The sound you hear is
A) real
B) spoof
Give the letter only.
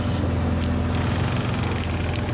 A